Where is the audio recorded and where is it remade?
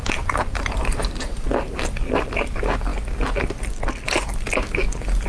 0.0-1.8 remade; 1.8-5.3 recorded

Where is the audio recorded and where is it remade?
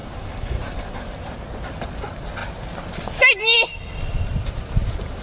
0.0-1.2 remade; 1.2-5.2 recorded